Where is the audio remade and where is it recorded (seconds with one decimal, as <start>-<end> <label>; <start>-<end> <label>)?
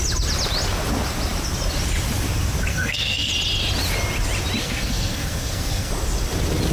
0.0-2.7 recorded; 2.7-3.3 remade; 3.3-4.6 recorded; 4.6-5.9 remade; 5.9-6.7 recorded